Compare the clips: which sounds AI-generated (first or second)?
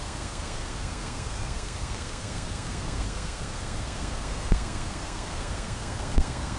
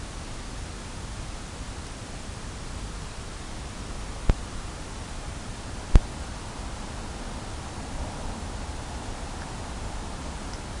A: first